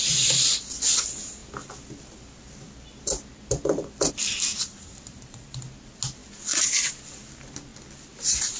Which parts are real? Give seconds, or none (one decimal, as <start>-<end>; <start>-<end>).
0.0-4.5; 5.6-8.6